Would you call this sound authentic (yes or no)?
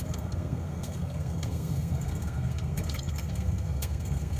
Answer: no